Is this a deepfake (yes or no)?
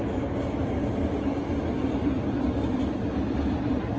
no